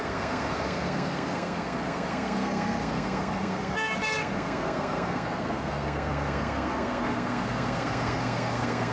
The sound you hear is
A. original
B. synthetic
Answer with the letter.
B